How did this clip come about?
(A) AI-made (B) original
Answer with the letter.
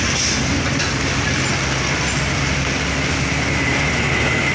B